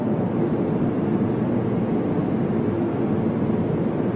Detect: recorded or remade recorded